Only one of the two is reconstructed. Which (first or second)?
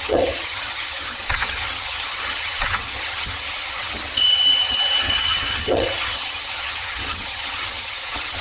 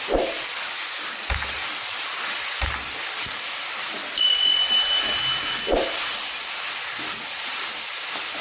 first